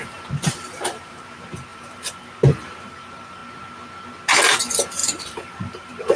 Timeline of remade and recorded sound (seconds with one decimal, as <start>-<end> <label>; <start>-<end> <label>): 0.0-3.4 remade; 3.4-4.6 recorded; 4.6-6.2 remade